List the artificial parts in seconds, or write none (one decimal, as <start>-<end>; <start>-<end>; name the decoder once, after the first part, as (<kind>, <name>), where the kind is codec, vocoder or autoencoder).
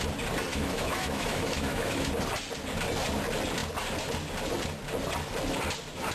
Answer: 0.5-2.1 (autoencoder, DAC-VAE)